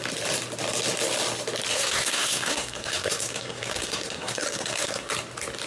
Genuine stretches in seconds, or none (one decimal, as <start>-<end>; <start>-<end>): 0.0-1.7; 5.1-5.7